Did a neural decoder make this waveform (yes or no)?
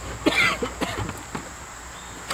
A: no